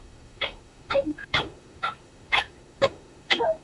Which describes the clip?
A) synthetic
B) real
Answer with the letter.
A